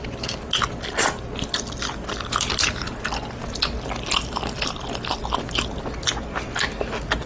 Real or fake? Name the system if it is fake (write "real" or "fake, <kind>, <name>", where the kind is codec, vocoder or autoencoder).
real